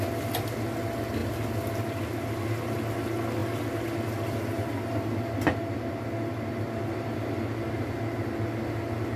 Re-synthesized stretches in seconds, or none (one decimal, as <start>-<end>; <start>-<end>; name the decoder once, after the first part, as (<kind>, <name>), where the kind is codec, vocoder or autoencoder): none